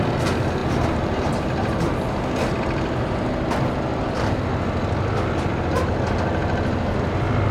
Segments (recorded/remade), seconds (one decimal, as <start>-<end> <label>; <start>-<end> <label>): 0.0-7.5 recorded